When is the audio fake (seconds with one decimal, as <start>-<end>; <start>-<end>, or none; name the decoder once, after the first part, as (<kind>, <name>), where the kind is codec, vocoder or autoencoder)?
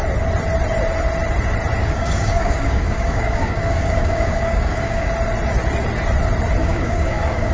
1.8-5.1 (codec, DAC); 6.6-7.5